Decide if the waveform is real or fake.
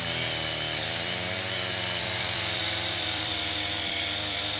fake